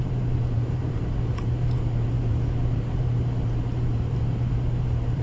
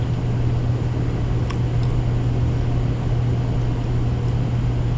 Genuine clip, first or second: second